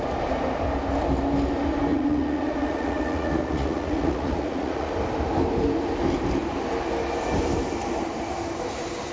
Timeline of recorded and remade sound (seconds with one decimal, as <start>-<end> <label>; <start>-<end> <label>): 0.0-1.9 recorded; 1.9-4.9 remade; 4.9-9.1 recorded